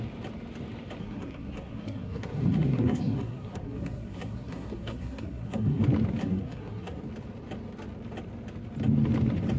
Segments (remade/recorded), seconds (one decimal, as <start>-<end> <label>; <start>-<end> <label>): 0.0-1.0 recorded; 1.0-5.8 remade; 5.8-6.2 recorded; 6.2-7.0 remade; 7.0-9.6 recorded